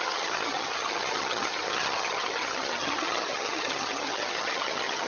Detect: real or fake fake